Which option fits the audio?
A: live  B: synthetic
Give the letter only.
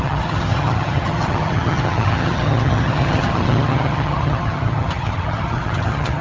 B